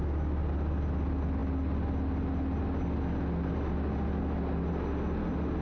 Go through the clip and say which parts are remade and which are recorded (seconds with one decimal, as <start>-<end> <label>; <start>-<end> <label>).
0.0-5.6 recorded